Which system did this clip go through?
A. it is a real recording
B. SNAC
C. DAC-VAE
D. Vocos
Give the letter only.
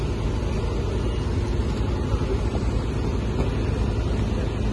A